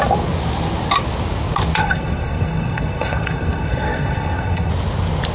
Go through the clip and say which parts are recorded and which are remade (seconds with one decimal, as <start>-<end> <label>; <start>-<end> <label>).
0.0-1.8 recorded; 1.8-4.7 remade; 4.7-5.3 recorded